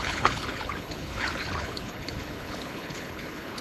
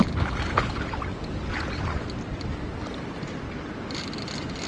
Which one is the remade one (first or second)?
first